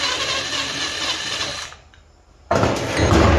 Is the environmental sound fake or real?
real